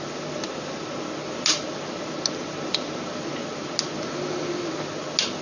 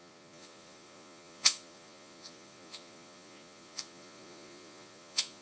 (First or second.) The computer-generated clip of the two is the second